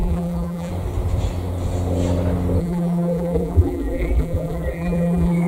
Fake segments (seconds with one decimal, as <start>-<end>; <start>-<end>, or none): 0.0-0.7; 2.6-5.5